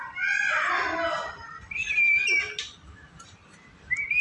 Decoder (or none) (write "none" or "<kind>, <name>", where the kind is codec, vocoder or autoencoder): none